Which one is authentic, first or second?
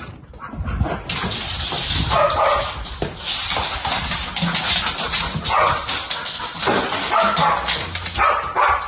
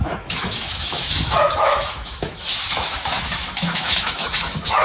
first